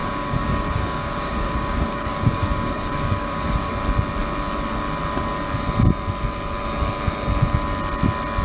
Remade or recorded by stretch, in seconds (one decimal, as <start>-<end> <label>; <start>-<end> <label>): 0.0-3.7 remade; 3.7-8.4 recorded